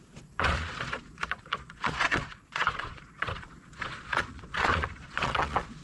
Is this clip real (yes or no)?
no